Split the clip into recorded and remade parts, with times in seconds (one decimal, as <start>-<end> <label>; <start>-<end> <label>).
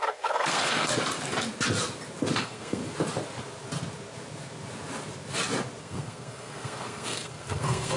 0.0-0.9 remade; 0.9-2.4 recorded; 2.4-2.8 remade; 2.8-5.8 recorded; 5.8-8.0 remade